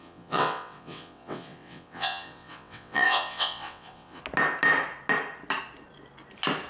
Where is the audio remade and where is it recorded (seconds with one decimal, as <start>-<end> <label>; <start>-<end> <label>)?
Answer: 0.0-4.2 remade; 4.2-6.7 recorded